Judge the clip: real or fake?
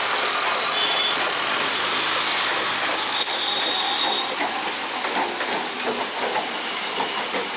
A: real